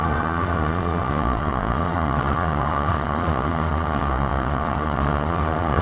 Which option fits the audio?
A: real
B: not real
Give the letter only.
B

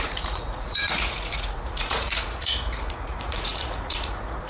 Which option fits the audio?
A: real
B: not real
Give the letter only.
B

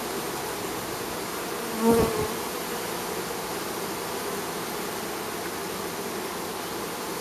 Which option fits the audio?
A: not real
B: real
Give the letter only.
B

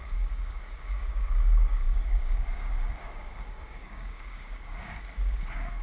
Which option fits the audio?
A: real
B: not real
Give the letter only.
B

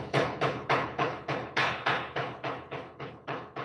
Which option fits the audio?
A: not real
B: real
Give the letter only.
A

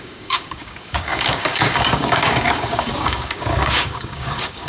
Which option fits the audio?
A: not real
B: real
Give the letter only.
A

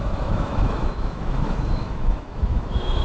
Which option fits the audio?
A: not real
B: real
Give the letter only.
A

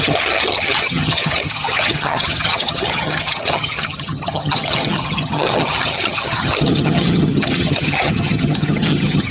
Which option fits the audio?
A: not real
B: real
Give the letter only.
A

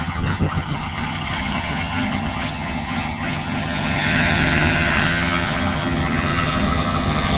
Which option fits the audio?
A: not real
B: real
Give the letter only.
A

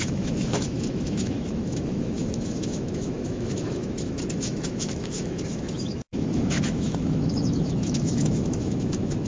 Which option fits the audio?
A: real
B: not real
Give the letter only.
B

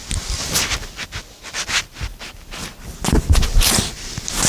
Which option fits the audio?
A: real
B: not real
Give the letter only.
A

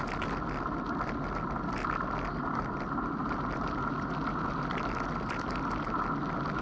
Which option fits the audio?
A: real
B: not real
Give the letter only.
A